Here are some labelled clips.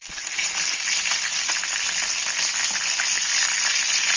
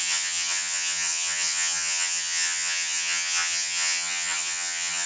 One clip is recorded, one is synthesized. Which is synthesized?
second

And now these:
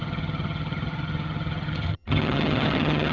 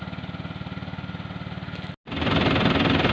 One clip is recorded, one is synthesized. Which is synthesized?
first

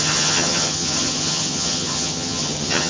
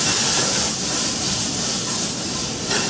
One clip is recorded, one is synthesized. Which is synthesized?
first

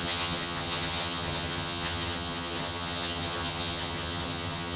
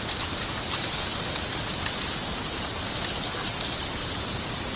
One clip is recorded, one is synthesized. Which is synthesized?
first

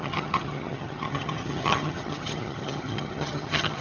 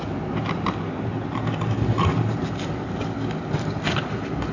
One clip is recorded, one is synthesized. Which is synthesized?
first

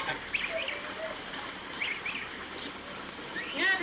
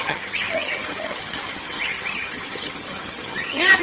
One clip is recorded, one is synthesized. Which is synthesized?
second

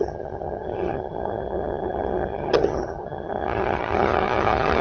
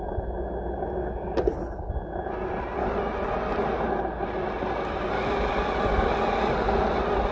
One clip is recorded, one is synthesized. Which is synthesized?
first